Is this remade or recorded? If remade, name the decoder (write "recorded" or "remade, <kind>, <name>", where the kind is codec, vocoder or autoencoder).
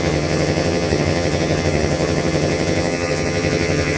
remade, vocoder, HiFi-GAN